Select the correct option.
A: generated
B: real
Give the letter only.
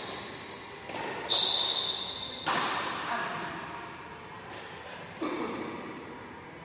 B